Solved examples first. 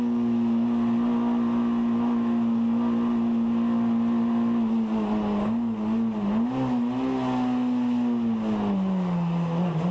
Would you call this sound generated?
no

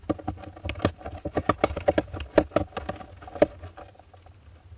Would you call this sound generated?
no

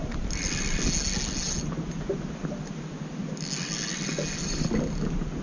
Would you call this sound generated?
no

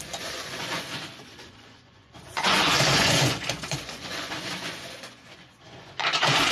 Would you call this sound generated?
yes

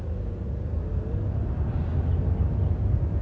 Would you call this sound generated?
no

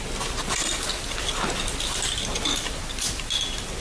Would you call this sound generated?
no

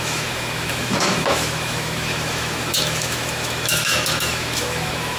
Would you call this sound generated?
yes